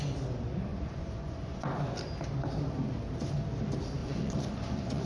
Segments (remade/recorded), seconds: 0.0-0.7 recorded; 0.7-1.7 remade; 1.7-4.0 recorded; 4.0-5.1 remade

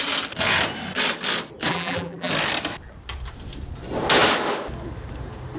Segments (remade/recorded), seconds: 0.0-1.7 recorded; 1.7-2.3 remade; 2.3-5.6 recorded

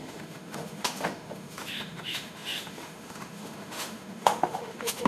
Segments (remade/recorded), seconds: 0.0-5.1 remade

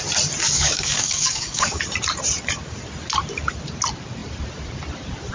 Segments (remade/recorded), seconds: 0.0-0.4 recorded; 0.4-1.8 remade; 1.8-5.3 recorded

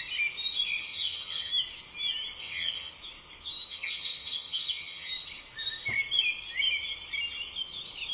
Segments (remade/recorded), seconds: 0.0-0.8 recorded; 0.8-1.5 remade; 1.5-2.4 recorded; 2.4-2.9 remade; 2.9-3.7 recorded; 3.7-5.1 remade; 5.1-8.1 recorded